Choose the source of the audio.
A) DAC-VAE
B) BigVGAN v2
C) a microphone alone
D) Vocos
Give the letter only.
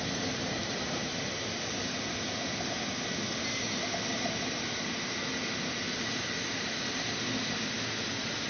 C